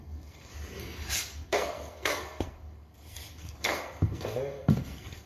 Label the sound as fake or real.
fake